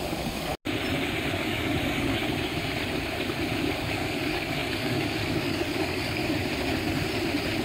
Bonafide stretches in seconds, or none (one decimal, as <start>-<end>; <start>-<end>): 0.5-1.3; 2.2-3.8; 6.2-7.6